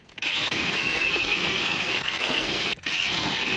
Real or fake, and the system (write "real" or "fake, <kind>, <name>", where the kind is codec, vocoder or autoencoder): fake, codec, SNAC